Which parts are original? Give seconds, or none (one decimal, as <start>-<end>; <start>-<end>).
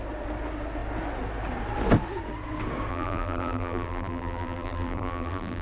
0.0-2.9